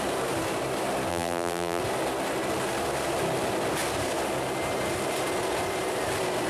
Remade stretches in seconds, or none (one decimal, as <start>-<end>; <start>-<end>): 1.1-1.8